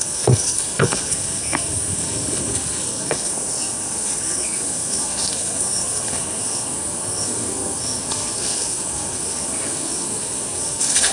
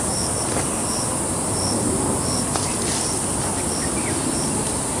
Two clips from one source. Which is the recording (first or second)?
second